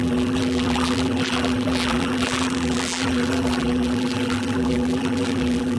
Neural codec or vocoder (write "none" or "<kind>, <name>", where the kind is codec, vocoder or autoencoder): vocoder, BigVGAN v2